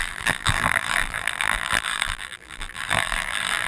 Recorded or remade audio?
remade